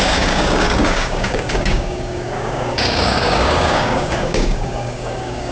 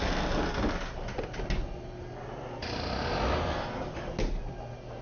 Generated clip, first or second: first